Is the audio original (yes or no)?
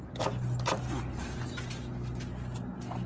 yes